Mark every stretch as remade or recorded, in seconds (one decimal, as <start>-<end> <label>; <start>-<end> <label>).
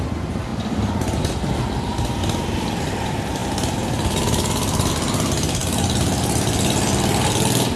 0.0-3.4 recorded; 3.4-4.9 remade; 4.9-7.8 recorded